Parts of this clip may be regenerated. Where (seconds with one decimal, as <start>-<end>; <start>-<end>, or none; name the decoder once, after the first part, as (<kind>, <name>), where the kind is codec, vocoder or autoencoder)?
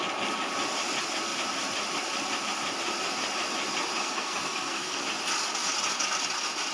4.0-5.0 (codec, SNAC)